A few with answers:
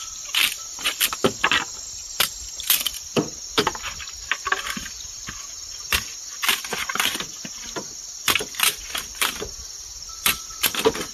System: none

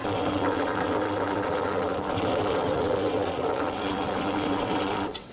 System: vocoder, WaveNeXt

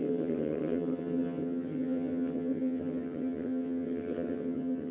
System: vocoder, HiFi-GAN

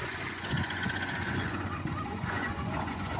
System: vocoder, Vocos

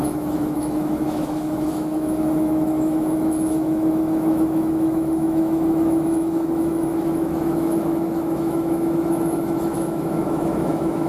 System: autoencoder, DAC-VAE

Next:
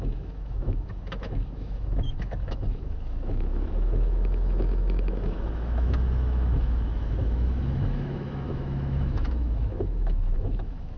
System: autoencoder, DAC-VAE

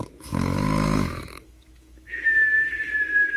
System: autoencoder, DAC-VAE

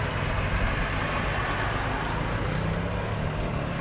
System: none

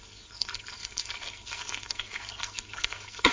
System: codec, SNAC